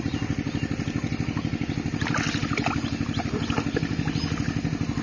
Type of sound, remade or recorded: recorded